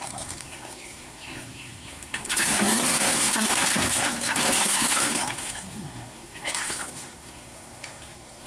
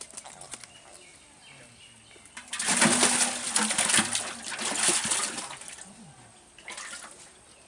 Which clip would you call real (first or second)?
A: second